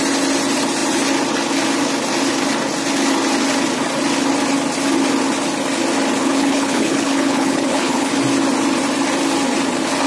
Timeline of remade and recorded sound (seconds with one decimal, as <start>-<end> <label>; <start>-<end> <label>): 0.0-6.2 recorded; 6.2-8.1 remade; 8.1-10.1 recorded